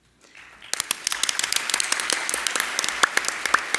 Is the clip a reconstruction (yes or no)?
no